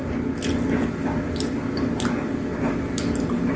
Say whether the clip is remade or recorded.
recorded